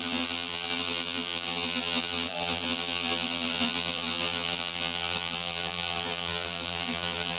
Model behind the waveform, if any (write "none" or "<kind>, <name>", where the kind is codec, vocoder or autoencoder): vocoder, BigVGAN v2